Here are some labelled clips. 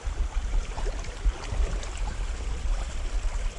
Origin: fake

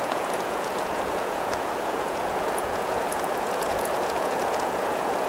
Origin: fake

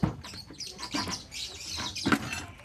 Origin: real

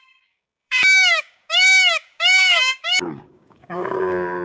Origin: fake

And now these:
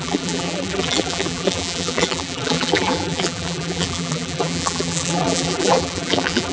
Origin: fake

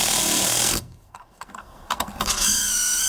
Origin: fake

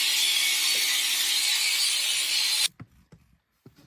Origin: real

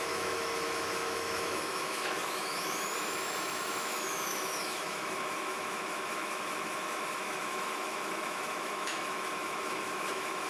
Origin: fake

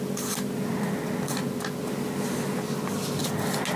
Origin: real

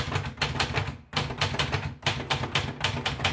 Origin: real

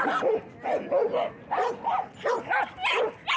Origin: real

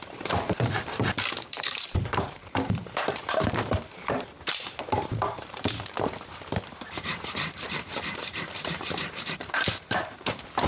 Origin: fake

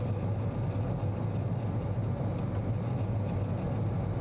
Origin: real